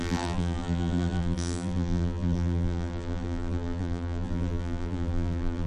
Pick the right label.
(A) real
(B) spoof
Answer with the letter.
B